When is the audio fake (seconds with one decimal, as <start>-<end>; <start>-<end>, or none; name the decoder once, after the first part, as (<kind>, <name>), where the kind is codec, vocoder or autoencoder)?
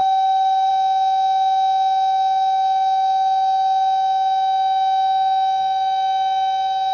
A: 0.0-0.7 (autoencoder, DAC-VAE)